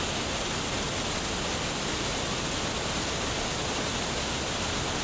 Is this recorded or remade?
recorded